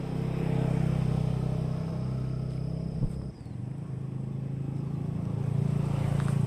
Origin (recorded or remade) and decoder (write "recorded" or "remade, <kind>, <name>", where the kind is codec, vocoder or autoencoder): recorded